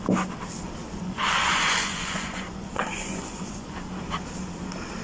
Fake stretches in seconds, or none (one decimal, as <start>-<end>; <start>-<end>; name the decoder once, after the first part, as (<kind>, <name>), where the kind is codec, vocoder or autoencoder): 0.8-3.8 (vocoder, Vocos)